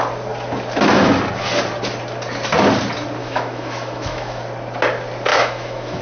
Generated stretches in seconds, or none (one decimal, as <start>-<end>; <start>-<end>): 3.2-4.4; 5.3-6.0